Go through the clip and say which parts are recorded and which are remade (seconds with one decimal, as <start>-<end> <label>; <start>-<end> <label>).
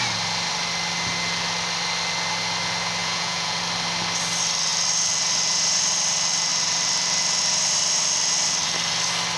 0.0-3.0 recorded; 3.0-3.6 remade; 3.6-9.4 recorded